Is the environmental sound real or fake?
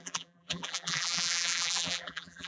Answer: fake